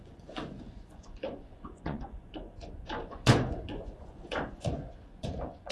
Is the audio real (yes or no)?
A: no